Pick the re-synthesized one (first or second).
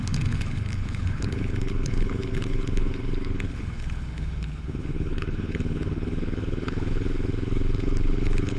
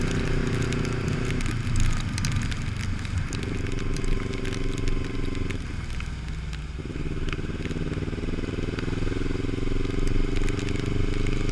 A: first